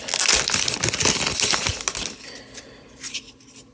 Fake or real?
real